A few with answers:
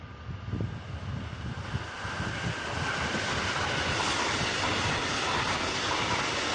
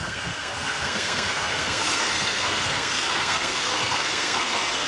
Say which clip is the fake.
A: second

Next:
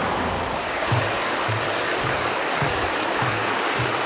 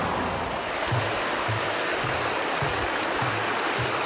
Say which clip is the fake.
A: first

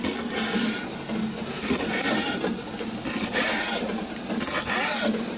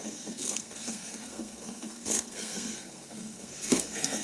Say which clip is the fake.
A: second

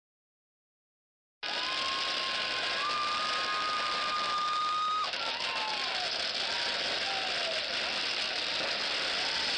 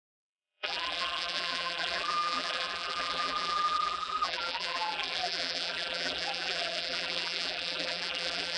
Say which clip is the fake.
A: second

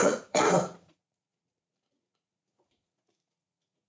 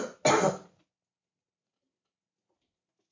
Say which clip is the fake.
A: first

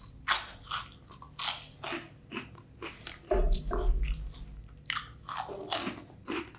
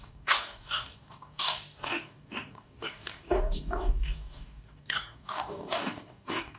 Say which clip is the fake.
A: second